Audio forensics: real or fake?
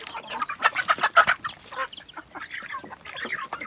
real